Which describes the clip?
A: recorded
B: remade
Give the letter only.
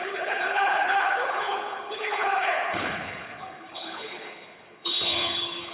B